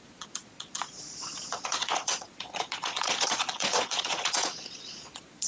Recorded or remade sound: remade